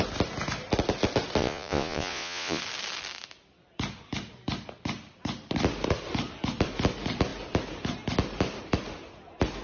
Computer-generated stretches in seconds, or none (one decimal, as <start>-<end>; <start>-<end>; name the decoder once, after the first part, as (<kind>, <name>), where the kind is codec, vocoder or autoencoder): 1.4-2.6 (vocoder, Vocos)